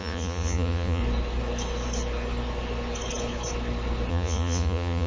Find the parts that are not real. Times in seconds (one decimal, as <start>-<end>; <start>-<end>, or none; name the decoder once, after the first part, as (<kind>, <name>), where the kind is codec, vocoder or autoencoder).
0.0-1.0 (vocoder, Vocos); 4.1-5.1

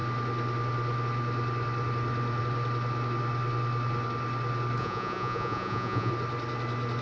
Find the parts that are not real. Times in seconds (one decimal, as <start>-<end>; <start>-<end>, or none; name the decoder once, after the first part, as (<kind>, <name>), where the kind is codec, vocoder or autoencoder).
4.8-6.1 (vocoder, Vocos)